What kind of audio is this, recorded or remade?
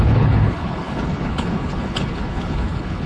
remade